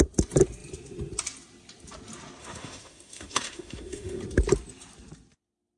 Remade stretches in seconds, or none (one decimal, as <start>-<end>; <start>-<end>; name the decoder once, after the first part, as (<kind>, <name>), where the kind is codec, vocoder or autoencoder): 2.4-4.2 (autoencoder, DAC-VAE)